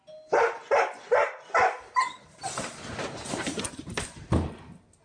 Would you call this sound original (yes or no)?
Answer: yes